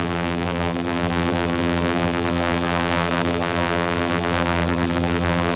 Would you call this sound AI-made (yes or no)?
yes